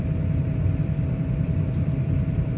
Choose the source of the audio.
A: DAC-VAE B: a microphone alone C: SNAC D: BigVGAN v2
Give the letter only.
D